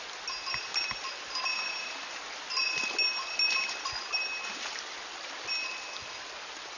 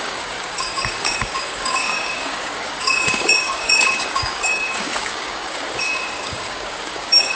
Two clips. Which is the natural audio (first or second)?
first